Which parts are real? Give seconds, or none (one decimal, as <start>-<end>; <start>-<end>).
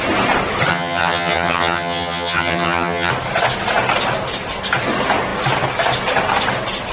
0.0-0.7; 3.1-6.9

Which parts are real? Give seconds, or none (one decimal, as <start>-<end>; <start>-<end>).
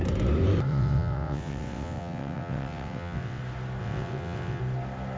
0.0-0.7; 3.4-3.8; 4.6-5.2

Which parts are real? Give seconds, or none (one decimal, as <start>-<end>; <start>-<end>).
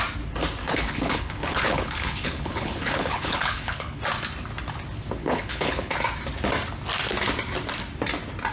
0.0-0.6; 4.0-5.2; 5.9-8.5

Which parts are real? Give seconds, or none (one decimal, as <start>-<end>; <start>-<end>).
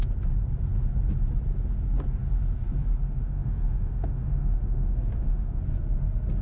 0.0-3.2; 5.6-6.4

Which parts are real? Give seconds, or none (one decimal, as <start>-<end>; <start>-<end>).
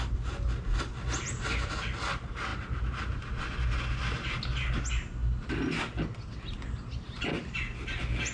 0.0-8.3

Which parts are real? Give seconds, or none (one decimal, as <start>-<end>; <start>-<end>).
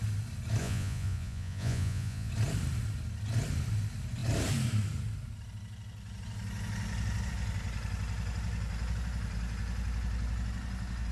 0.0-0.6; 2.3-11.1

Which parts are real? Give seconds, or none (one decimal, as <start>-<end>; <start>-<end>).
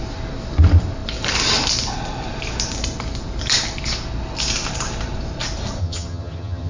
0.0-5.8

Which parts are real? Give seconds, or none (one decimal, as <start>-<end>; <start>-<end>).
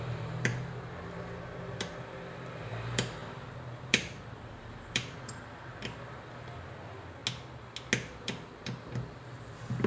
7.2-8.2